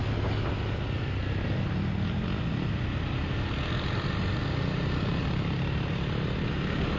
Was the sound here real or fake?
real